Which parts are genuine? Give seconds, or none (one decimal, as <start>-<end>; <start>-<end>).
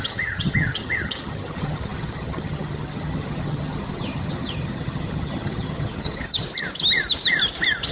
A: 6.4-7.9